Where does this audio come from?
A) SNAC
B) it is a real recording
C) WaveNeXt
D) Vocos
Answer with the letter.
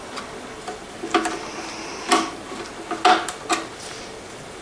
B